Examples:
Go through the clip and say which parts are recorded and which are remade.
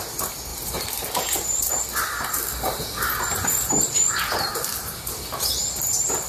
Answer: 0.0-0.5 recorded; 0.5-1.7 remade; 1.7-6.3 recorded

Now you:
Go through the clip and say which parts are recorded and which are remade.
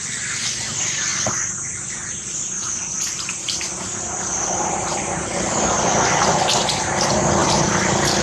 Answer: 0.0-1.1 recorded; 1.1-5.5 remade; 5.5-7.4 recorded; 7.4-8.2 remade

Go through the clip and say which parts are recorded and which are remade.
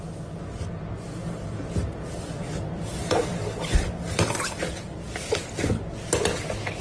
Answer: 0.0-1.2 recorded; 1.2-5.3 remade; 5.3-6.8 recorded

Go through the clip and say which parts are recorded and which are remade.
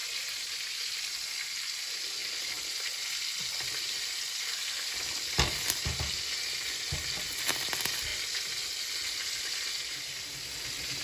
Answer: 0.0-2.2 recorded; 2.2-4.9 remade; 4.9-11.0 recorded